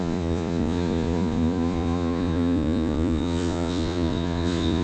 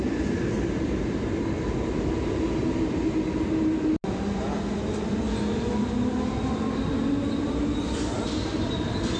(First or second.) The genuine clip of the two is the second